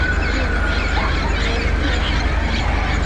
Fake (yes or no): no